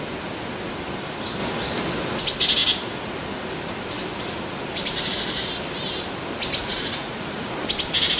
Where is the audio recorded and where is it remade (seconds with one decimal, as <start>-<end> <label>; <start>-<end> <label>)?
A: 0.0-6.6 recorded; 6.6-7.6 remade; 7.6-8.2 recorded